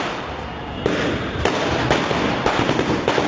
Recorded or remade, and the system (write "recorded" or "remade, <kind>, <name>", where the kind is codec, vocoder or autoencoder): recorded